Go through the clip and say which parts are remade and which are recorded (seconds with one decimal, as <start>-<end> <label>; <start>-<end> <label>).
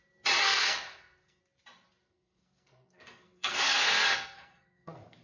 0.0-0.4 recorded; 0.4-1.4 remade; 1.4-2.0 recorded; 2.0-5.2 remade